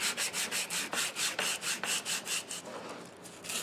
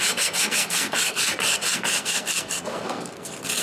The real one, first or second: first